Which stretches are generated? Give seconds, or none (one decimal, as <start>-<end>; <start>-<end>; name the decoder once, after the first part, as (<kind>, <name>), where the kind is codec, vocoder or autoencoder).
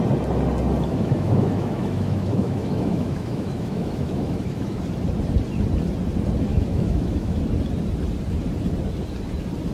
0.9-4.8 (autoencoder, DAC-VAE); 6.5-7.4